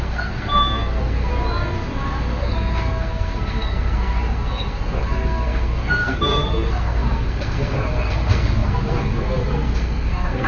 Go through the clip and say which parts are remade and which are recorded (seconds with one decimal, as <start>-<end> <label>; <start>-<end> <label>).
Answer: 0.0-1.3 remade; 1.3-2.4 recorded; 2.4-10.5 remade